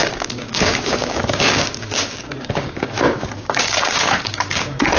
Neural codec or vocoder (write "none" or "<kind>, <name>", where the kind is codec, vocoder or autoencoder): codec, DAC